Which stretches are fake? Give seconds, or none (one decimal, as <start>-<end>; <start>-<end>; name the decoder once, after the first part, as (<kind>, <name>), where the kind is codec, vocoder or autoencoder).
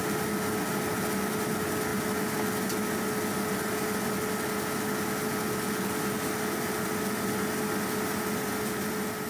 none